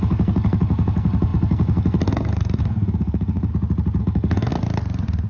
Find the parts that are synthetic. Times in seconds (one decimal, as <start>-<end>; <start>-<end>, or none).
0.0-3.5; 4.0-4.5

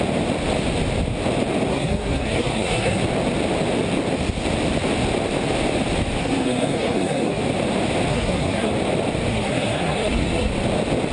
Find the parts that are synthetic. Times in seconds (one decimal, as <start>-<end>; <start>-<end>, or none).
1.7-3.0; 6.2-7.4; 8.1-8.7; 9.3-10.5

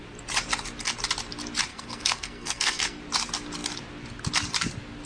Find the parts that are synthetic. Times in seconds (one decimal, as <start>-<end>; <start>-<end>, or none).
1.7-3.0

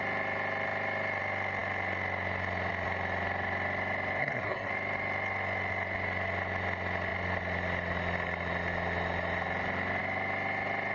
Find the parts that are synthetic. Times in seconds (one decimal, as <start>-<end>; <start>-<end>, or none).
4.2-4.7

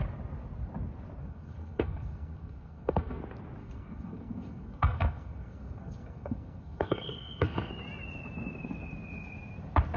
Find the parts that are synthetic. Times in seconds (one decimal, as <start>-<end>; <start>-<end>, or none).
1.2-3.2; 3.6-7.7

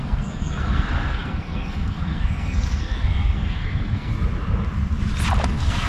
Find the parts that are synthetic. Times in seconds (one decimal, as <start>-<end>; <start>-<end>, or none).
0.0-4.1; 5.5-5.9